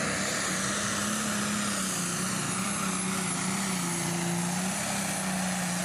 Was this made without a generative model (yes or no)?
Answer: yes